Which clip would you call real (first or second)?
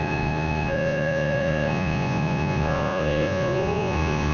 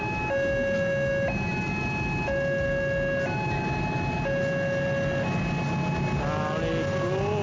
second